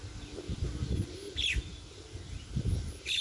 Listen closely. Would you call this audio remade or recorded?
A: recorded